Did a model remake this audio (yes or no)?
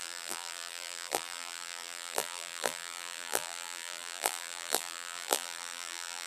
yes